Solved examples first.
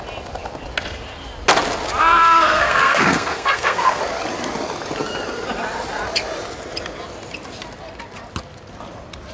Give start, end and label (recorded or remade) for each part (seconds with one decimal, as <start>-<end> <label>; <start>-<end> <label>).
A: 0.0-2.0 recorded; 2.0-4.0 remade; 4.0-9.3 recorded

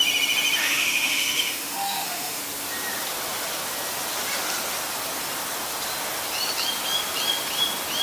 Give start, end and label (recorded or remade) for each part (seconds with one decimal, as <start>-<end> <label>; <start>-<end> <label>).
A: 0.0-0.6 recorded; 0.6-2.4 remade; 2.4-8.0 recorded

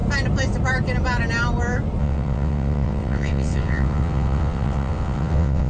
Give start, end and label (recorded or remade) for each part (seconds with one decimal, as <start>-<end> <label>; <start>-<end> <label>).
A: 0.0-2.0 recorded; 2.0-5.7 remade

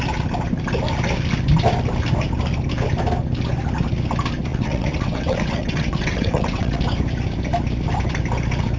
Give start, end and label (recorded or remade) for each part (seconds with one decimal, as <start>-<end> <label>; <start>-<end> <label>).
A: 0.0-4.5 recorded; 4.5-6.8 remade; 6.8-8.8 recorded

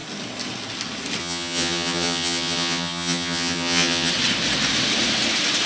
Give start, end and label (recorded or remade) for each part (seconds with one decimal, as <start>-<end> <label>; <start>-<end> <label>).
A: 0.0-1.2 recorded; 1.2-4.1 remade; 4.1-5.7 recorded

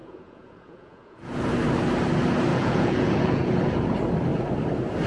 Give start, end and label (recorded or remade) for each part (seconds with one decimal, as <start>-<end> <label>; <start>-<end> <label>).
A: 0.0-1.4 remade; 1.4-2.5 recorded; 2.5-3.5 remade; 3.5-5.1 recorded